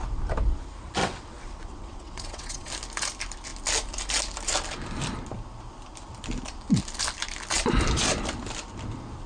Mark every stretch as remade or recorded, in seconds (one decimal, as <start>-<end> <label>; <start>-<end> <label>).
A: 0.0-1.0 recorded; 1.0-2.7 remade; 2.7-9.3 recorded